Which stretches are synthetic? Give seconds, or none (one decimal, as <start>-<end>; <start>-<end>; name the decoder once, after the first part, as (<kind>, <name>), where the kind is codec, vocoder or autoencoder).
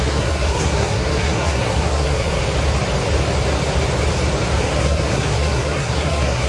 0.0-2.4 (codec, SNAC); 4.6-6.5